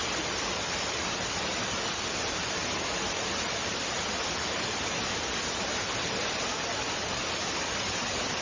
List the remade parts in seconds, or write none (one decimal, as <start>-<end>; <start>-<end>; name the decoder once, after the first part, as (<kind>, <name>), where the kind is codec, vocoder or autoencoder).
0.0-5.1 (vocoder, BigVGAN v2); 7.5-8.4